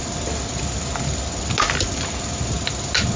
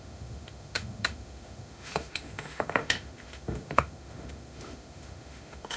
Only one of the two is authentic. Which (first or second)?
first